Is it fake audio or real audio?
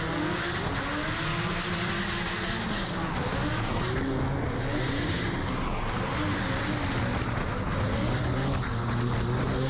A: real